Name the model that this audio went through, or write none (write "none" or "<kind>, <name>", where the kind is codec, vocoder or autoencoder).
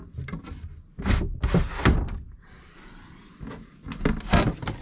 none